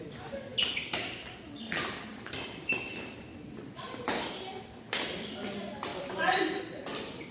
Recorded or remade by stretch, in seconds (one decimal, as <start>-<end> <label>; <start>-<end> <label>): 0.0-2.1 recorded; 2.1-3.8 remade; 3.8-5.9 recorded; 5.9-6.6 remade; 6.6-7.3 recorded